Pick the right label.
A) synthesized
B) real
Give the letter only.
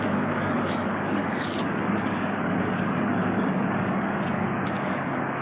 A